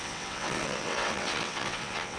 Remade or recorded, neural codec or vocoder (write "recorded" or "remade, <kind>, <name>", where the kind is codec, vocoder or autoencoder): remade, vocoder, WaveNeXt